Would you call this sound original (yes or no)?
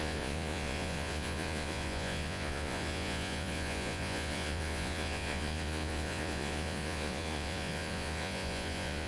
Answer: no